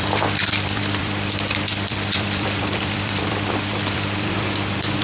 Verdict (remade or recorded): remade